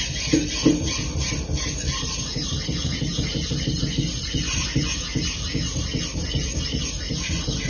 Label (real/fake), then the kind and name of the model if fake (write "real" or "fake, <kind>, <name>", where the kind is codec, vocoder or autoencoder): real